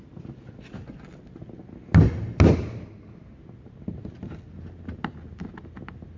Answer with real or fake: real